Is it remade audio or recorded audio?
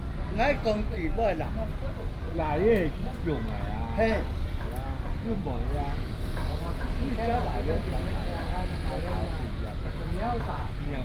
recorded